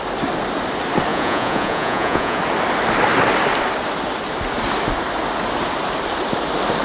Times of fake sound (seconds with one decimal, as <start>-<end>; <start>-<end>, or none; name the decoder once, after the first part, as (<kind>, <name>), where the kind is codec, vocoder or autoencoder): 1.1-2.4 (vocoder, Vocos)

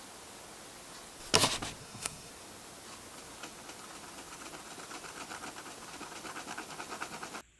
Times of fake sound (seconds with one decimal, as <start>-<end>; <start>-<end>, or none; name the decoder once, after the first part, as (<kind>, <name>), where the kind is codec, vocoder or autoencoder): 1.8-2.3 (codec, SNAC)

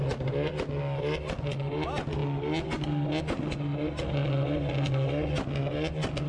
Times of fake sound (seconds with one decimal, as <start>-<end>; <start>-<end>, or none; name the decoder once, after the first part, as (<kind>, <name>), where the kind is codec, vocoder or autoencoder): none

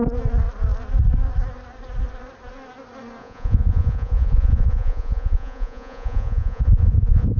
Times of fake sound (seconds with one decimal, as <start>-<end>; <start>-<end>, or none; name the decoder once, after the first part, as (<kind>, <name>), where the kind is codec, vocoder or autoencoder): 3.2-7.4 (vocoder, Vocos)

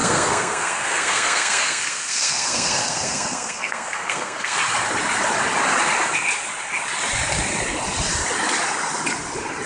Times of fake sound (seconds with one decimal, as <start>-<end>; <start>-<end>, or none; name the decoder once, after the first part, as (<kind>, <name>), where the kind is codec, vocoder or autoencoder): 0.0-4.6 (codec, SNAC)